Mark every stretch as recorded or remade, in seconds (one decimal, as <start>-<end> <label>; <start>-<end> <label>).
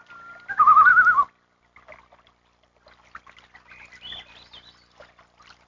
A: 0.0-5.7 recorded